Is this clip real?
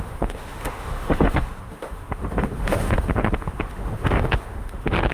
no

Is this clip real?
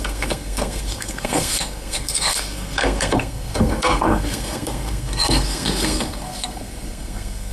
no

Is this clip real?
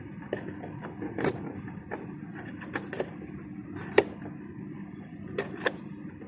yes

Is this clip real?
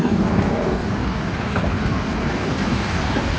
no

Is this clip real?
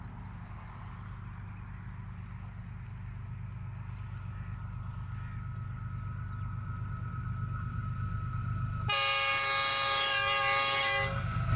yes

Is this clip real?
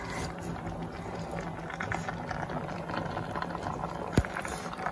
yes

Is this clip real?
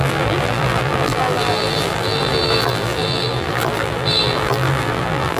no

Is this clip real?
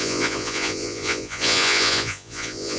no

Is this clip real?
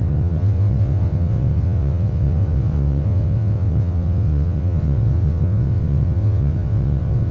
no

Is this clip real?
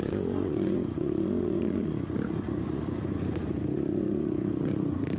no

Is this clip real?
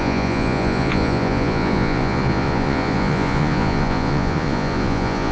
no